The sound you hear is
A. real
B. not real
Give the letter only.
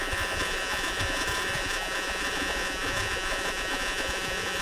B